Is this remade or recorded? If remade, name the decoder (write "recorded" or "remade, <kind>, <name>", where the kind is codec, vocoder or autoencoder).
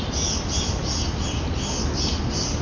recorded